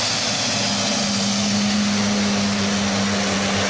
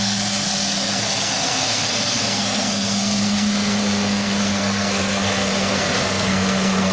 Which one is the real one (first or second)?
first